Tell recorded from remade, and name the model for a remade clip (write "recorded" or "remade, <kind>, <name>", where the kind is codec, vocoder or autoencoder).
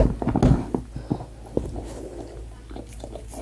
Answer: recorded